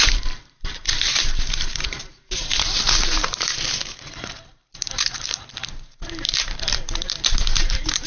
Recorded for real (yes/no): no